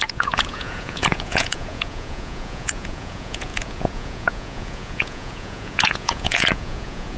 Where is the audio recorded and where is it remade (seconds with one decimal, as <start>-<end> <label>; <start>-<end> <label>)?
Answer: 0.0-7.2 remade